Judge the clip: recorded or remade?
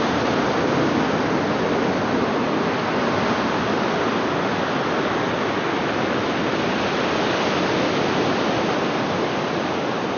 recorded